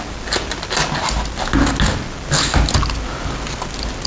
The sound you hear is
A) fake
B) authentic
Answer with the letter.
B